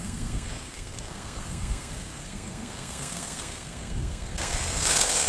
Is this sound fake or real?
fake